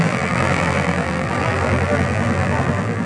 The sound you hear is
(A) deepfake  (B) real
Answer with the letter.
A